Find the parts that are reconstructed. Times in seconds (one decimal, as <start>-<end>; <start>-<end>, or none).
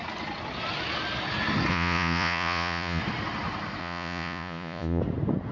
1.7-3.0; 3.8-5.0